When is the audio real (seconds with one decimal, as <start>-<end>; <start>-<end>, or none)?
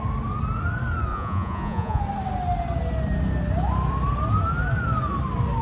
0.0-1.1; 2.0-5.6